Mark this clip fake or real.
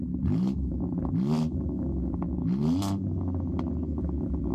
real